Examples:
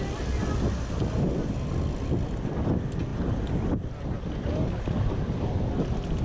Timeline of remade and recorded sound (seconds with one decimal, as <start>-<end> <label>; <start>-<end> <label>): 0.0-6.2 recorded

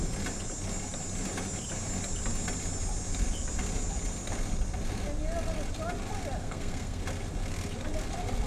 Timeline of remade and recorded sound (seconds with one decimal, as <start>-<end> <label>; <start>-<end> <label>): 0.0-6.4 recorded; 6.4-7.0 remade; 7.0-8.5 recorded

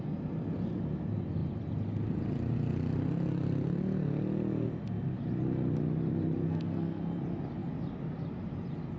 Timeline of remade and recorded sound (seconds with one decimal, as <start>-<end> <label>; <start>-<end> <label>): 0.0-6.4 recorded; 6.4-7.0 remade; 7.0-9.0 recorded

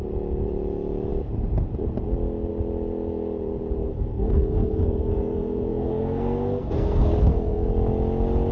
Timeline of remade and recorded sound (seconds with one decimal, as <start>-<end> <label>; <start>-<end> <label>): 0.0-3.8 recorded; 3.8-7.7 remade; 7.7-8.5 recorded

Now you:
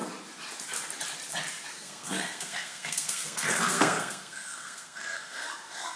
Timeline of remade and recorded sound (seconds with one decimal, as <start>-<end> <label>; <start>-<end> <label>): 0.0-1.7 recorded; 1.7-6.0 remade

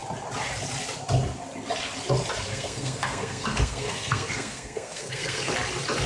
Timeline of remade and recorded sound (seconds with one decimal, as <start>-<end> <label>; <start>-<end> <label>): 0.0-2.5 recorded; 2.5-5.5 remade; 5.5-6.1 recorded